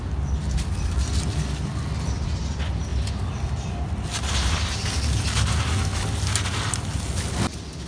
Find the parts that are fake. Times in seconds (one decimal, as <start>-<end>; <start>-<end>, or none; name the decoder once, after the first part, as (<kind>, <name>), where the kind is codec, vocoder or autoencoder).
none